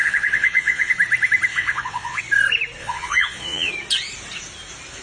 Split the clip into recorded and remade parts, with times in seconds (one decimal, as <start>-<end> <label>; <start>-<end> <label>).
0.0-0.9 remade; 0.9-1.5 recorded; 1.5-2.2 remade; 2.2-2.8 recorded; 2.8-3.7 remade; 3.7-5.0 recorded